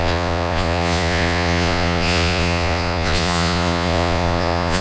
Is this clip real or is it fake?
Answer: fake